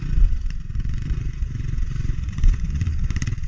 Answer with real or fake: fake